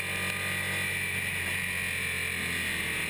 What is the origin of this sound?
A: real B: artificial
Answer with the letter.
A